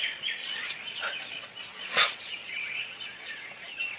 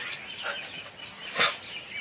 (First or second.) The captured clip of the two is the second